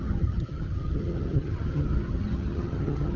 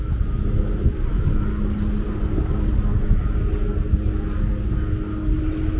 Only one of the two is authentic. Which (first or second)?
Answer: second